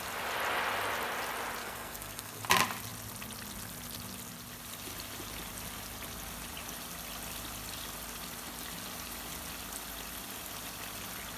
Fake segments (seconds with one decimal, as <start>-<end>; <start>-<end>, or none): 1.6-2.4